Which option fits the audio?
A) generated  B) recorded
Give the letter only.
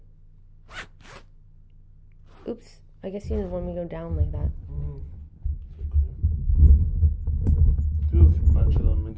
B